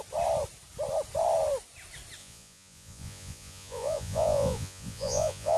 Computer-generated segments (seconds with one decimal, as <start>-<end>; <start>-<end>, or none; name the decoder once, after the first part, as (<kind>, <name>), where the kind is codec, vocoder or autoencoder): 2.2-5.6 (vocoder, Vocos)